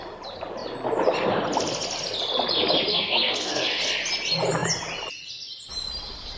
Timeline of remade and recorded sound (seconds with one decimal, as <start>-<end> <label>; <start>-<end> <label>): 0.0-2.9 recorded; 2.9-3.8 remade; 3.8-6.4 recorded